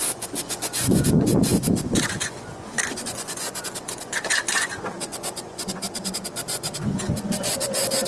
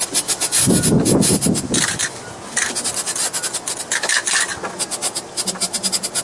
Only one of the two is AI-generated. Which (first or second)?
first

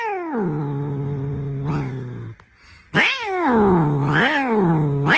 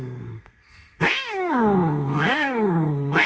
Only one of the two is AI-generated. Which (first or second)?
second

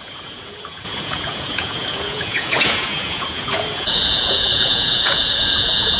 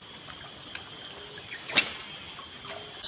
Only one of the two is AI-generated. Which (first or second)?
first